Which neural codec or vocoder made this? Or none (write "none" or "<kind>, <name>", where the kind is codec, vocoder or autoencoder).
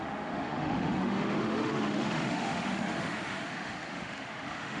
autoencoder, DAC-VAE